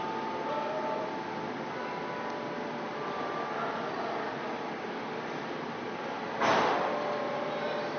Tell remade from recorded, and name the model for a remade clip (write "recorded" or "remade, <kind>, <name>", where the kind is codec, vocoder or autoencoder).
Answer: recorded